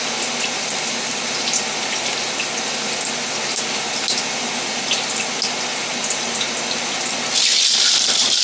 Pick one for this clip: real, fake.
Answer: real